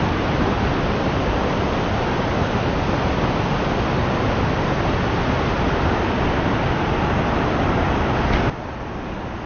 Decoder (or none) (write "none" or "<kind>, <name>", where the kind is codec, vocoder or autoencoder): none